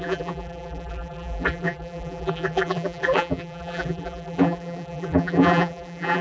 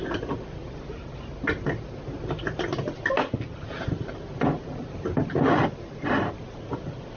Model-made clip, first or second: first